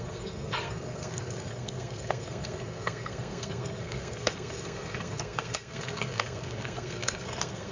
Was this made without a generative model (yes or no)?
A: no